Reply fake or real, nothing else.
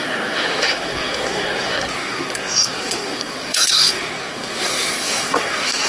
fake